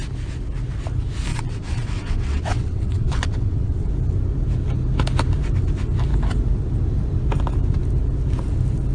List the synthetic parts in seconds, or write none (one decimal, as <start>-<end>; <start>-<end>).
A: 1.3-3.9

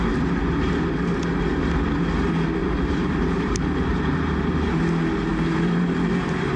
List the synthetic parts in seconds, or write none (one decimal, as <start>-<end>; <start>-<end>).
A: 2.6-4.8; 5.3-6.6

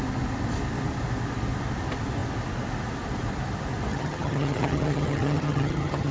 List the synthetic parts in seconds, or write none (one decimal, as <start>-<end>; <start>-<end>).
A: 3.9-6.1

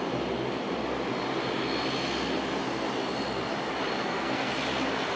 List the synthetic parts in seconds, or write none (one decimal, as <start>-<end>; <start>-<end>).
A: 4.0-4.5

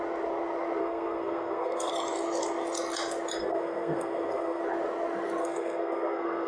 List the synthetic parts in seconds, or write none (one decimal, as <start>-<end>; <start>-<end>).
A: 0.8-1.9; 3.4-4.6; 5.4-6.5

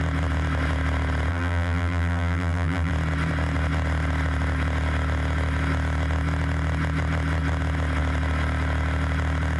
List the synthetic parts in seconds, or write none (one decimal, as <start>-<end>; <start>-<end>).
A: 1.3-2.9